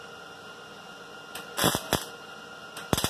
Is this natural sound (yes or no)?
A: yes